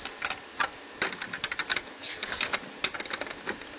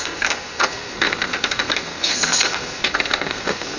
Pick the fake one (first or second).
second